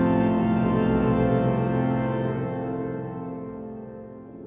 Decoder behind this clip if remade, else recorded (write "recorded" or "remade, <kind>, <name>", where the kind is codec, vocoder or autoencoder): recorded